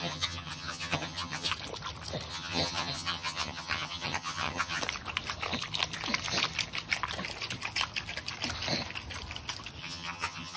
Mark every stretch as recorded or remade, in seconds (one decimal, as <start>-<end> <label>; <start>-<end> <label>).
0.0-1.5 remade; 1.5-2.3 recorded; 2.3-4.8 remade; 4.8-9.8 recorded; 9.8-10.6 remade